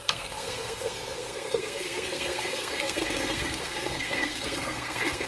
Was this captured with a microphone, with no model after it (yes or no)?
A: no